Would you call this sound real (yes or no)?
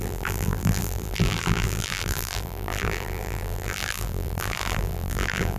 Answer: no